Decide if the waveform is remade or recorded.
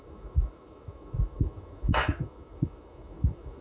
remade